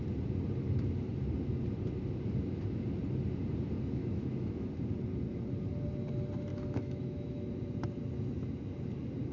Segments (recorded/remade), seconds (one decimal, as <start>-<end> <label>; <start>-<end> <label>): 0.0-4.0 recorded; 4.0-4.7 remade; 4.7-6.5 recorded; 6.5-7.5 remade; 7.5-9.3 recorded